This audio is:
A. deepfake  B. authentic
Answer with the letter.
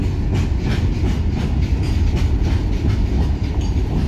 B